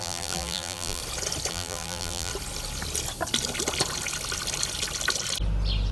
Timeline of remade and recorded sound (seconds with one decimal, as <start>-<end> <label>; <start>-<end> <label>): 0.0-1.0 remade; 1.0-1.5 recorded; 1.5-2.3 remade; 2.3-5.9 recorded